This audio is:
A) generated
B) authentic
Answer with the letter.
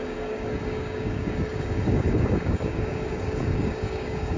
A